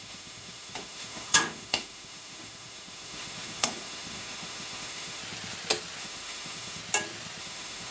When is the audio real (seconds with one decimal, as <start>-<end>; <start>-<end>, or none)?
5.2-6.0; 6.8-7.4